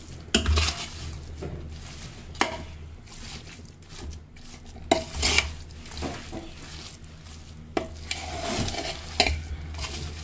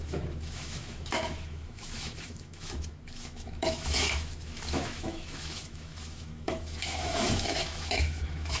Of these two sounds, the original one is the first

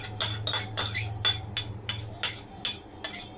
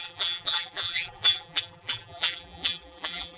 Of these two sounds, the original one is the first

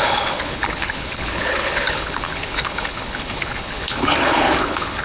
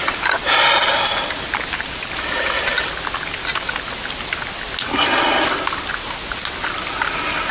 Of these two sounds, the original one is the second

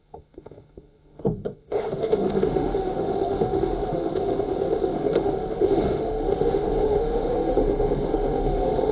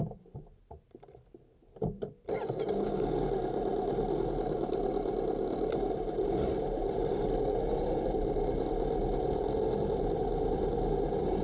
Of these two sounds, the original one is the second